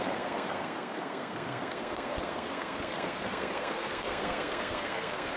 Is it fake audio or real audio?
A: fake